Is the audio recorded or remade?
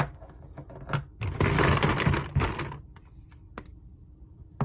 recorded